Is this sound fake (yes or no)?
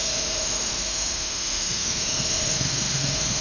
yes